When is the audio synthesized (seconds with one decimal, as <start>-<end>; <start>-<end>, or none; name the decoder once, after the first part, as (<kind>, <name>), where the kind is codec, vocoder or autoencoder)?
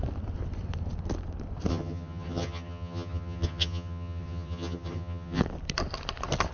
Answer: 1.7-5.4 (vocoder, HiFi-GAN)